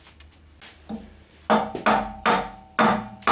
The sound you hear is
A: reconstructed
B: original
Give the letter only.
B